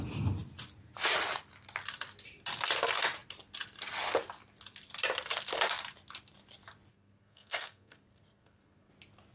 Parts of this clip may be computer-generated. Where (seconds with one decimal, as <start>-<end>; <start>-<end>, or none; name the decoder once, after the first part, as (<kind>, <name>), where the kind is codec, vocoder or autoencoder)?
6.9-8.9 (codec, SNAC)